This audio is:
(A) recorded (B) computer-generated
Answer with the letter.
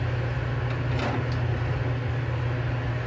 A